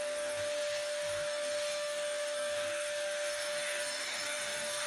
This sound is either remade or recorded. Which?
remade